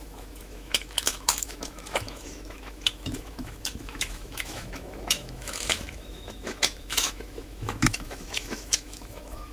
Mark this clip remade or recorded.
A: remade